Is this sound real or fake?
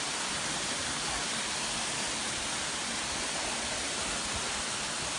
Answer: real